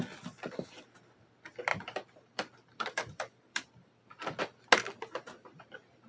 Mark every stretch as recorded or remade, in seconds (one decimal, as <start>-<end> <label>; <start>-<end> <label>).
0.0-1.7 recorded; 1.7-4.4 remade; 4.4-6.1 recorded